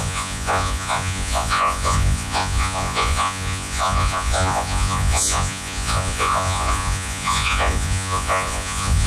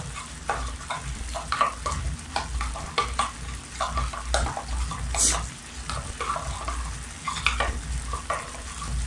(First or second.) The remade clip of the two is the first